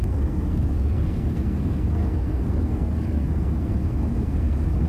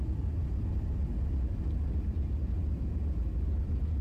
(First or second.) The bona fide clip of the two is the second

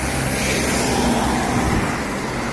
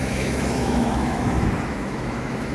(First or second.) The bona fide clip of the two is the first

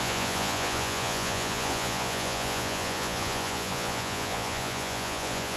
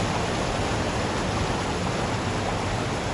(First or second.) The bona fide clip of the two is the second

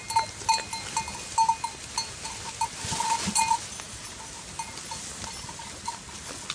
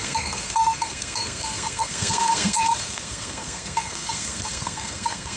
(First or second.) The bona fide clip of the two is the first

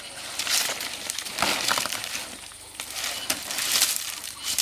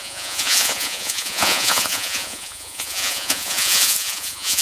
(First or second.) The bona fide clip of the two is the first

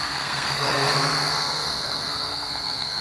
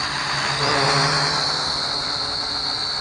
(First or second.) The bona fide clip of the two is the second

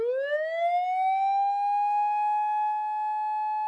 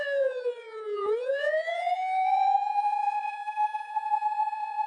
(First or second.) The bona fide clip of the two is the first